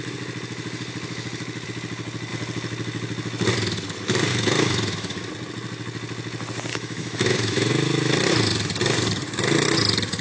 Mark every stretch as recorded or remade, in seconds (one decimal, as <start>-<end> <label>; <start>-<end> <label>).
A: 0.0-4.3 recorded; 4.3-5.3 remade; 5.3-6.7 recorded; 6.7-7.7 remade; 7.7-10.2 recorded